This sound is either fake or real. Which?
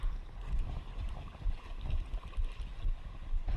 real